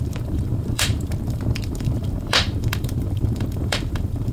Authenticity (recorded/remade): remade